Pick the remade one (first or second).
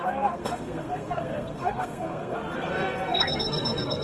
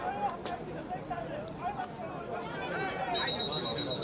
first